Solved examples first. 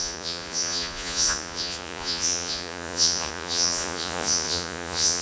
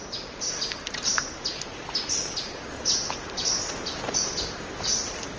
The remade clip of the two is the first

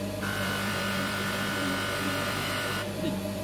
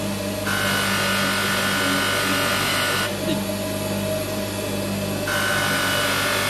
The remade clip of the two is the first